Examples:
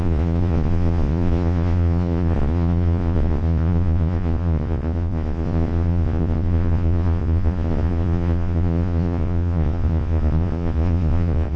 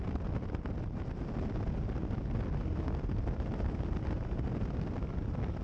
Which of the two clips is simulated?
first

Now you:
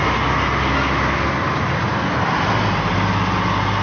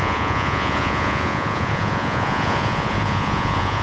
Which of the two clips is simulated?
second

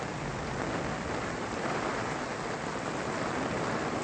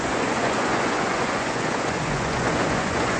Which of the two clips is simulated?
second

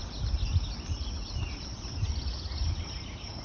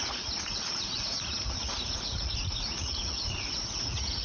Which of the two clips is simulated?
second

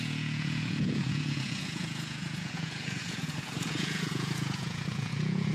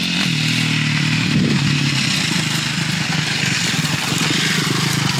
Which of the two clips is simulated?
first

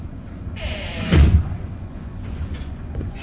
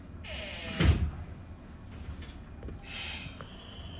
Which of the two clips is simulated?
first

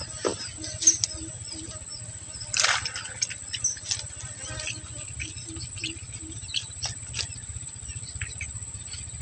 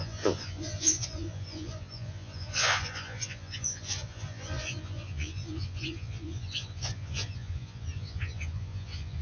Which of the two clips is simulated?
second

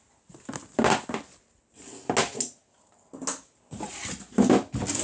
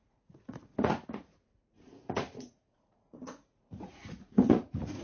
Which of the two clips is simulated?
second